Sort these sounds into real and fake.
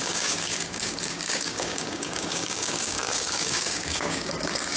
fake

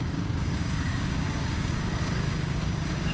fake